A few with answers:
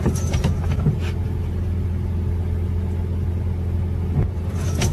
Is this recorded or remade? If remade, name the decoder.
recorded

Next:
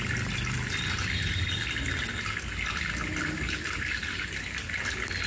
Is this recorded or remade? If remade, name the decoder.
recorded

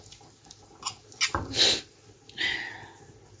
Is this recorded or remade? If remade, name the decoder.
recorded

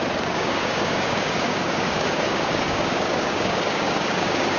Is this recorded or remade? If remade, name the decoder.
remade, codec, DAC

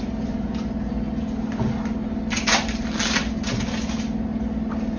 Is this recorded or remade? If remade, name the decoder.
recorded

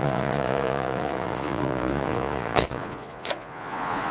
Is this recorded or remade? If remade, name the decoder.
remade, vocoder, Vocos